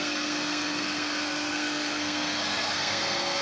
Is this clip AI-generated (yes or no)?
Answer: yes